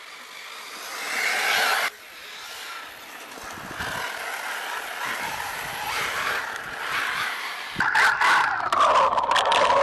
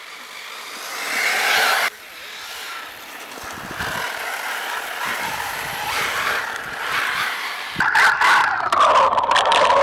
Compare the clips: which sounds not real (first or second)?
second